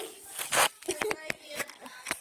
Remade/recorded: recorded